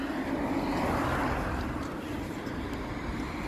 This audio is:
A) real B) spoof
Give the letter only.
A